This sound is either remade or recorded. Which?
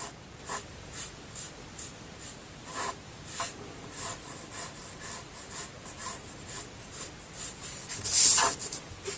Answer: recorded